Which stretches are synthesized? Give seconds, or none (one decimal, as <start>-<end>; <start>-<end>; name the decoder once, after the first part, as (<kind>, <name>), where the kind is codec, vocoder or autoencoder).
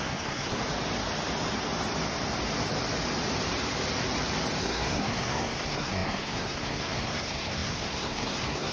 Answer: 0.0-0.6 (codec, SNAC); 4.6-8.7